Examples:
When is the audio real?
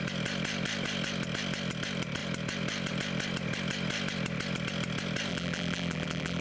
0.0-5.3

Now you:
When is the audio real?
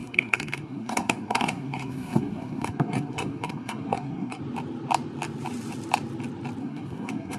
4.4-6.6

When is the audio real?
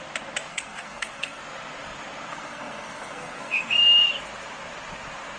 0.0-0.5; 1.4-2.3; 3.8-5.4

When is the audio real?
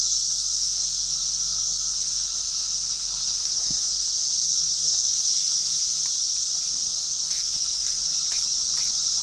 5.7-6.7; 8.1-9.2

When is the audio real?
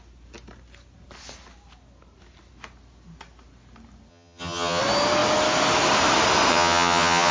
0.0-4.1; 4.8-6.5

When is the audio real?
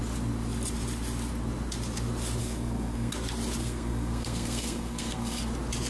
0.0-2.4; 3.1-3.6; 5.4-5.9